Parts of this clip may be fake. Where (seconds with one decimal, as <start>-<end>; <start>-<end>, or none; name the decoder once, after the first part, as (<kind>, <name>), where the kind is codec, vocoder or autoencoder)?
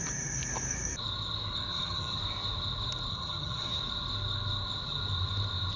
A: 1.7-2.2 (vocoder, HiFi-GAN); 3.1-3.8